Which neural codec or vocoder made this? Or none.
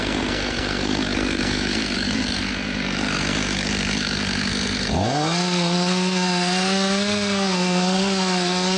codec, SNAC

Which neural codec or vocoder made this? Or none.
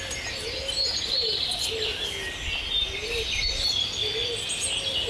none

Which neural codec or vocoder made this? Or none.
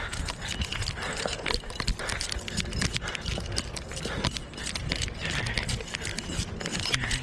none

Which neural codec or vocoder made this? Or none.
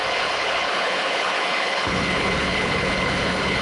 codec, HILCodec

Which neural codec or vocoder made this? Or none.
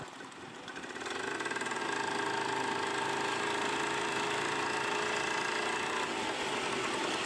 none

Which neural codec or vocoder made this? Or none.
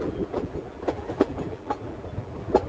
vocoder, BigVGAN v2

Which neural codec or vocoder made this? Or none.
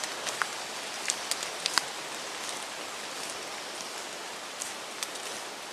none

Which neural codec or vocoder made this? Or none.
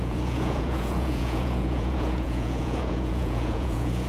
vocoder, Vocos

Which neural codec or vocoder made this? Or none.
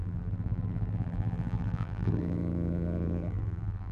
vocoder, BigVGAN v2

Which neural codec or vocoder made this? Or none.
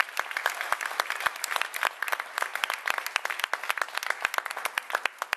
none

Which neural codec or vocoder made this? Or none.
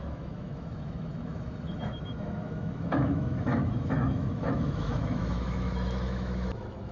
autoencoder, DAC-VAE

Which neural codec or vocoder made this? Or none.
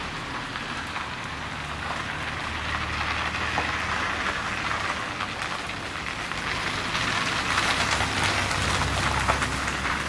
none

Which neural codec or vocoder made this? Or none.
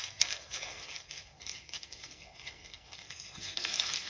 codec, SNAC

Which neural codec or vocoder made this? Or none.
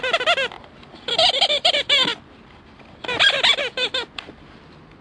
none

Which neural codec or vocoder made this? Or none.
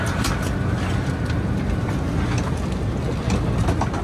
none